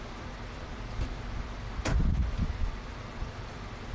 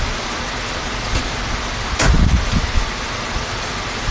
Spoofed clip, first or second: second